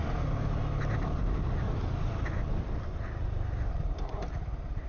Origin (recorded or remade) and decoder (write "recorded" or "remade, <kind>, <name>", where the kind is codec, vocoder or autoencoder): recorded